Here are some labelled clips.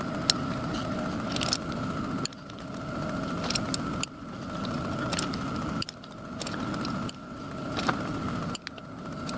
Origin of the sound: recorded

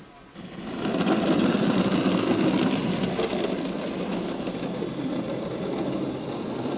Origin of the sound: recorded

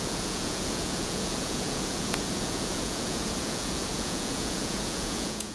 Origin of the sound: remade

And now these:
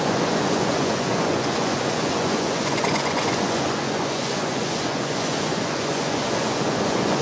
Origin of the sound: remade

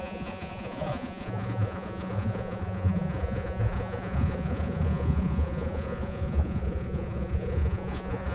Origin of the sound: remade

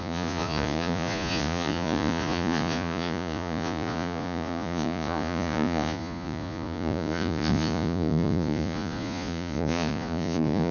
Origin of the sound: remade